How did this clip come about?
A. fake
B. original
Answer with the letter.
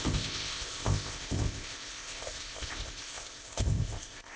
A